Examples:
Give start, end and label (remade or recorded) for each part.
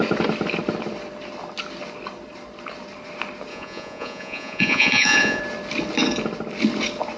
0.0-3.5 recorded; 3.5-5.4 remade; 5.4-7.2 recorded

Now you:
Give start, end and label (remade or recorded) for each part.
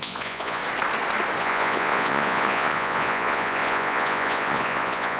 0.0-0.6 remade; 0.6-1.4 recorded; 1.4-5.2 remade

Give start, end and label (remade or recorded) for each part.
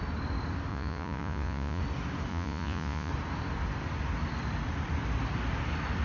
0.0-0.7 recorded; 0.7-1.8 remade; 1.8-2.3 recorded; 2.3-3.1 remade; 3.1-6.0 recorded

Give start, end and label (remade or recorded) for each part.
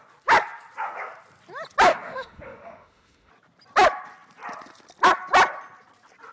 0.0-1.9 recorded; 1.9-3.3 remade; 3.3-6.3 recorded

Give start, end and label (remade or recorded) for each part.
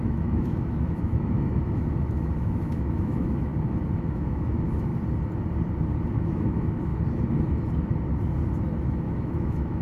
0.0-3.5 remade; 3.5-4.1 recorded; 4.1-4.9 remade; 4.9-6.1 recorded; 6.1-6.9 remade; 6.9-8.8 recorded; 8.8-9.8 remade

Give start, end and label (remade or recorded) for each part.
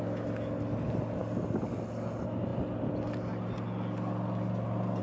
0.0-5.0 recorded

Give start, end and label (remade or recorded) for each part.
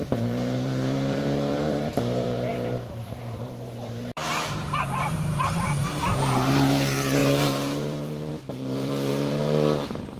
0.0-10.2 remade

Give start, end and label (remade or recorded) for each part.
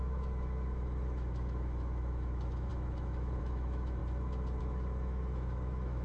0.0-4.0 remade; 4.0-4.6 recorded; 4.6-6.0 remade